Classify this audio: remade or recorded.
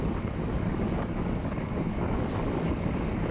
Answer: remade